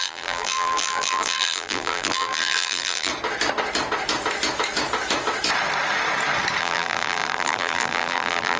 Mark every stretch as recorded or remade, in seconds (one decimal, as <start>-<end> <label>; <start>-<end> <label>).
0.0-3.1 remade; 3.1-6.6 recorded; 6.6-8.6 remade